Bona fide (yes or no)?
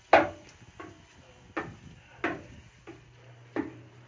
yes